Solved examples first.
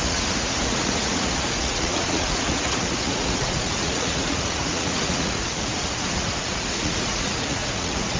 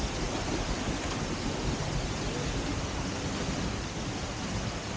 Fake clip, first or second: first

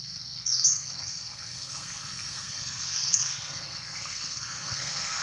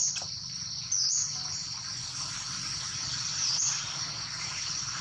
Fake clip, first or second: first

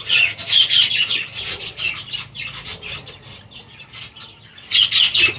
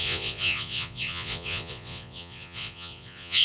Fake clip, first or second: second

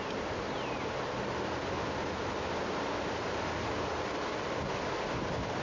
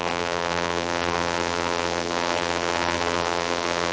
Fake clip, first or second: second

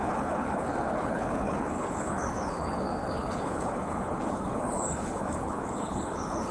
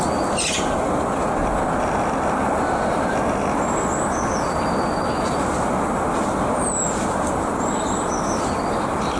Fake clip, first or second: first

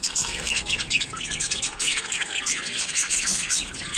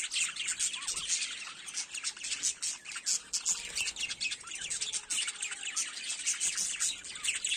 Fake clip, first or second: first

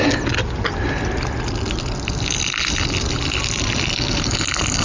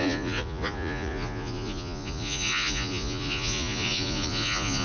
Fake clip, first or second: second